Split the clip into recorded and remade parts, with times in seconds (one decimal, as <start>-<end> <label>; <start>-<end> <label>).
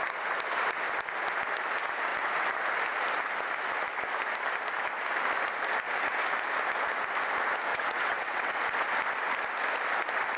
0.0-7.7 recorded; 7.7-8.5 remade; 8.5-10.4 recorded